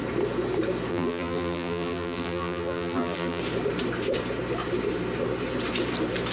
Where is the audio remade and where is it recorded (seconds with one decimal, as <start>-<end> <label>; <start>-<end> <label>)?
0.0-0.9 recorded; 0.9-3.4 remade; 3.4-6.3 recorded